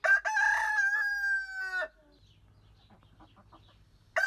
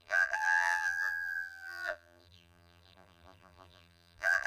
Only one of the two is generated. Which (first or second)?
second